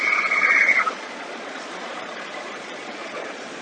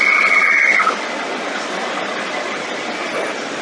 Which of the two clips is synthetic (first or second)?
first